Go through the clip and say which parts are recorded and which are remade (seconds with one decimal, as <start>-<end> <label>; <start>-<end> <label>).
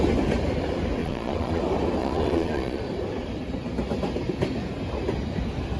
0.0-1.0 recorded; 1.0-1.6 remade; 1.6-2.0 recorded; 2.0-2.8 remade; 2.8-5.8 recorded